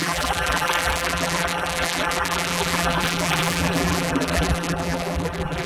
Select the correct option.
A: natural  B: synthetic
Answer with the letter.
B